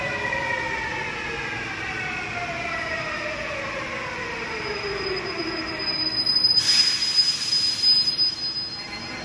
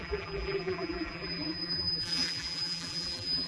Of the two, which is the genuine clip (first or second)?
first